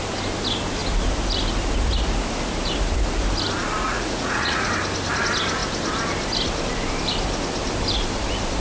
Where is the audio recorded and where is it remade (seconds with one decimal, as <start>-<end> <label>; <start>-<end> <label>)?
0.0-3.8 recorded; 3.8-4.7 remade; 4.7-8.6 recorded